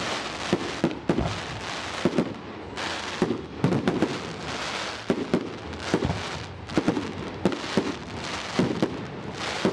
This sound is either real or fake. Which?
real